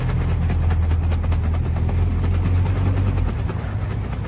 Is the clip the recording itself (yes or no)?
yes